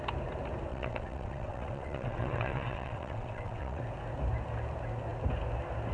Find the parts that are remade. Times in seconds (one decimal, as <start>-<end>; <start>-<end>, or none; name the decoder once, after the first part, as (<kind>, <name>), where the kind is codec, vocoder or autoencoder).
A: 0.7-3.8 (vocoder, WaveNeXt)